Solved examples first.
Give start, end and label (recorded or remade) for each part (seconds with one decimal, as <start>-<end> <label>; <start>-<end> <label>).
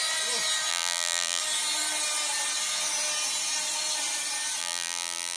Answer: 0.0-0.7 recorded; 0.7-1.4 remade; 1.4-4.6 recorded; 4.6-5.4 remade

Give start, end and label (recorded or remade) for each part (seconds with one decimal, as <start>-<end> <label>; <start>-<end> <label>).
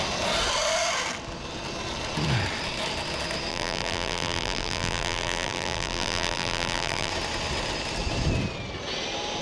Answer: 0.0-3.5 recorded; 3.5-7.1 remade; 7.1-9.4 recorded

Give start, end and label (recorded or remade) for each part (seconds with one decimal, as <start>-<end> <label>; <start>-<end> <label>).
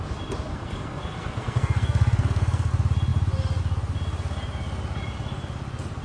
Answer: 0.0-0.5 recorded; 0.5-2.7 remade; 2.7-6.0 recorded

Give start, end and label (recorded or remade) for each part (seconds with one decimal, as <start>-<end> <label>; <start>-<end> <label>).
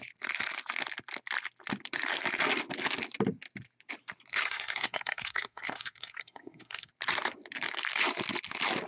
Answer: 0.0-4.3 recorded; 4.3-6.9 remade; 6.9-8.9 recorded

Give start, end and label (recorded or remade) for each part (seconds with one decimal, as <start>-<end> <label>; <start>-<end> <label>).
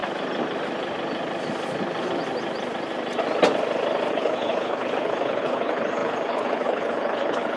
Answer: 0.0-4.1 recorded; 4.1-7.6 remade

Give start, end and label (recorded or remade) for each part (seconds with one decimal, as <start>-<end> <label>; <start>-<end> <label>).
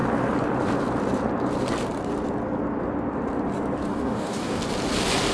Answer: 0.0-3.9 recorded; 3.9-4.6 remade; 4.6-5.3 recorded